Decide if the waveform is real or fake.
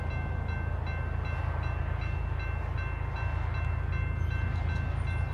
real